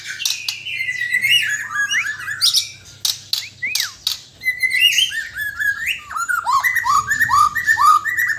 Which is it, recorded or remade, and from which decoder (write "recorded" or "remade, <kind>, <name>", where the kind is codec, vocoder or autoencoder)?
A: recorded